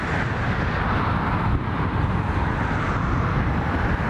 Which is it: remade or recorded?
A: recorded